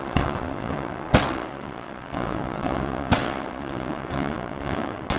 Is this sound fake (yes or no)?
yes